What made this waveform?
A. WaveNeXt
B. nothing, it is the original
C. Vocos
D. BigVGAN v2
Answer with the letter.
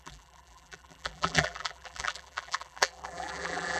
D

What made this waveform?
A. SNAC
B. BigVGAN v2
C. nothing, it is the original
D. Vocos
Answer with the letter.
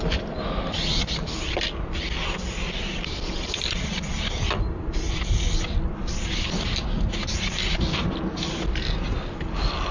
C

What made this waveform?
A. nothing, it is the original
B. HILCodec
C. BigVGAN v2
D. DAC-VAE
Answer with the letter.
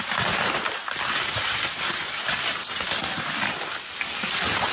A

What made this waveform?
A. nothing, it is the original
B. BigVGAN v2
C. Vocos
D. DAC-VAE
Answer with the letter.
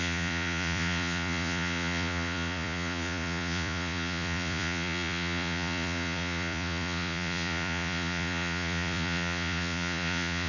C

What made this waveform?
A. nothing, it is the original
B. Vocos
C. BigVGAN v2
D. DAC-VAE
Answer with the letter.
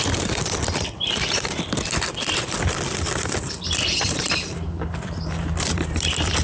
C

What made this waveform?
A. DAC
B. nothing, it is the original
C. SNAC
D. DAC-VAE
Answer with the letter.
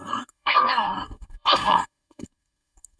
C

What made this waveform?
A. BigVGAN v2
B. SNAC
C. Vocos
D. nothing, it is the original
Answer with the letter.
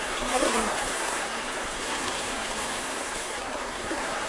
B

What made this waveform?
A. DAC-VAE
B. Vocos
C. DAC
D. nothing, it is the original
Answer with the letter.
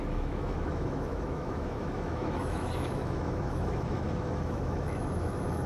A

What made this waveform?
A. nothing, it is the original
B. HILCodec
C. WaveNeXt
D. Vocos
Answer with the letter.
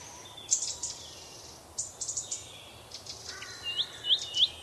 A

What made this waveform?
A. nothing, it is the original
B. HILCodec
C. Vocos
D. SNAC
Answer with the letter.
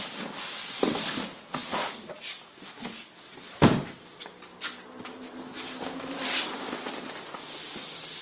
A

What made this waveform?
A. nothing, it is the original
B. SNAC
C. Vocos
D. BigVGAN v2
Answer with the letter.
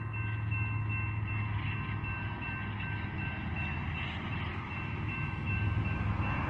A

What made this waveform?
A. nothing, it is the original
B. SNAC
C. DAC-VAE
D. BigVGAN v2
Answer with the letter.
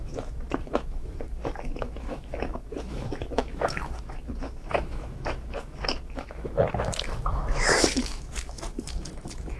C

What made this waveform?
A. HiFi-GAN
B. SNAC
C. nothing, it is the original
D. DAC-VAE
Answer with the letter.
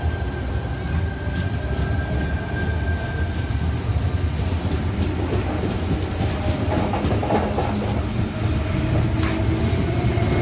C